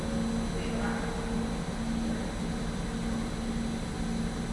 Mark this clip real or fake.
real